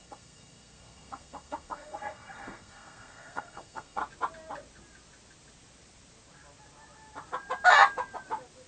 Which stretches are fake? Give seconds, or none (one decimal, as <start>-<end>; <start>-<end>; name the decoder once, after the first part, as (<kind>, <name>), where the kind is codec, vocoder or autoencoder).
0.0-4.0 (codec, SNAC)